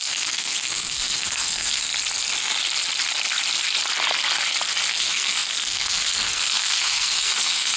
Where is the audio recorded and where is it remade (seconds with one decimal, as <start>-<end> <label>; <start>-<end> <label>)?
0.0-1.9 remade; 1.9-4.9 recorded; 4.9-7.8 remade